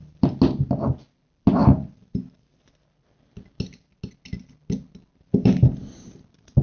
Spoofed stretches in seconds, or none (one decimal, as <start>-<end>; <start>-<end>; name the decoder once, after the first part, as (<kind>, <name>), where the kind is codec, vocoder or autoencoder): none

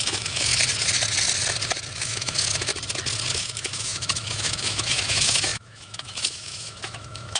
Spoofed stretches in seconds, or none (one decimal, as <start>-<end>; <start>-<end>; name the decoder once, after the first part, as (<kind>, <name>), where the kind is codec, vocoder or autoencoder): 0.0-0.5 (autoencoder, DAC-VAE); 2.0-2.7; 3.3-7.4